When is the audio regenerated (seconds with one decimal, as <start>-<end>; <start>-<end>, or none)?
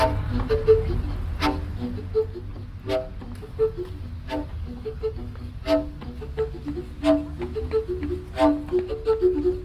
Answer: 4.5-5.5